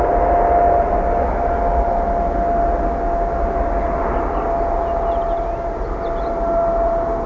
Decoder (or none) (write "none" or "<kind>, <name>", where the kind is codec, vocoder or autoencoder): none